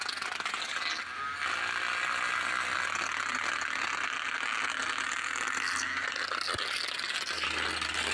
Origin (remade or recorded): recorded